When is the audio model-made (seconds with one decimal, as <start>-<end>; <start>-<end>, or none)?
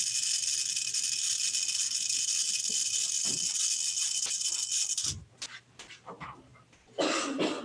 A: 6.5-7.6